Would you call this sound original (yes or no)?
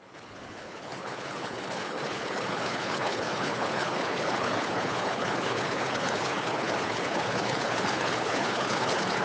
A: no